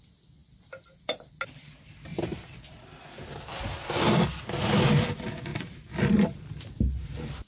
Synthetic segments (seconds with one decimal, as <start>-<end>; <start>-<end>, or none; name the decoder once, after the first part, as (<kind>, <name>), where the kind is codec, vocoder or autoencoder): 0.4-1.3 (vocoder, BigVGAN v2); 2.1-4.7; 5.5-6.5